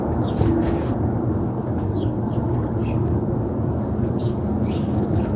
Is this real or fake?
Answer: fake